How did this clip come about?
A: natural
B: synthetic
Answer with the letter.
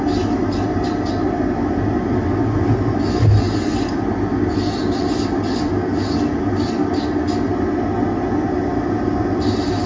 A